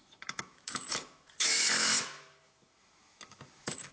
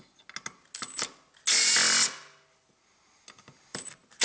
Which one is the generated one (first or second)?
first